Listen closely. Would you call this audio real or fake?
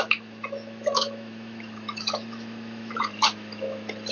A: fake